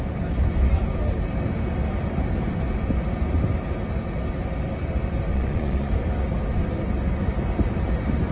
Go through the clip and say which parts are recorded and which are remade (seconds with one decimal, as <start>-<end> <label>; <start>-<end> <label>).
0.0-5.3 recorded; 5.3-5.9 remade; 5.9-8.3 recorded